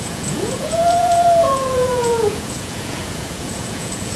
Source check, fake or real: fake